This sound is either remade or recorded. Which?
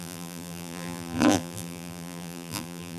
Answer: remade